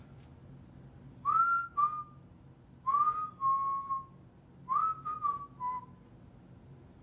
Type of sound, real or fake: real